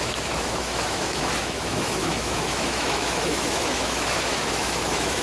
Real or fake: fake